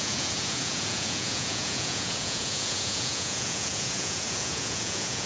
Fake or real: fake